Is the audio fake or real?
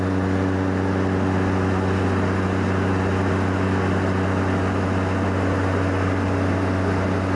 real